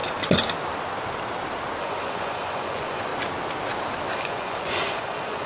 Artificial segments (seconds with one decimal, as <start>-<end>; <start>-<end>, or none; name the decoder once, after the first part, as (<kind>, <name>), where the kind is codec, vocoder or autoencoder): 1.8-3.1 (vocoder, Vocos); 4.1-5.5